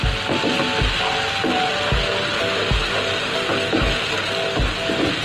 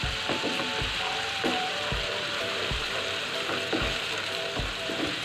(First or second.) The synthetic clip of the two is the second